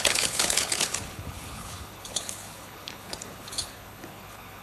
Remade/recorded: remade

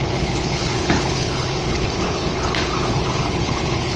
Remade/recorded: remade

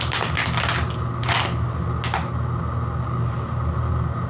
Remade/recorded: recorded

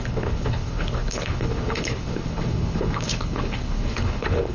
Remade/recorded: remade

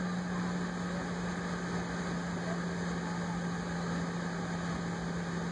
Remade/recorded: recorded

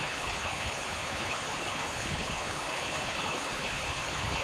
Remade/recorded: remade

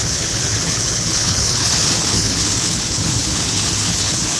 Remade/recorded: remade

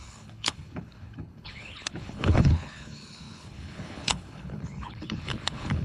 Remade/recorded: remade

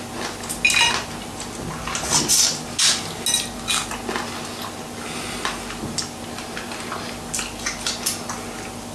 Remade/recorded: recorded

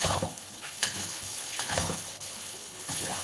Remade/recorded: remade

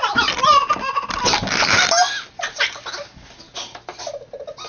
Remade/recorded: recorded